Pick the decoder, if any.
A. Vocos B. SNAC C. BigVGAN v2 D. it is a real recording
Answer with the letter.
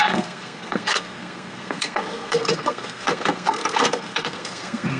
B